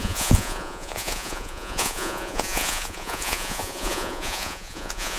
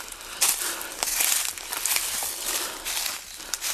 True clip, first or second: second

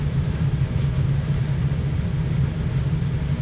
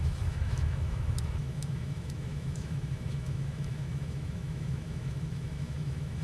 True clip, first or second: first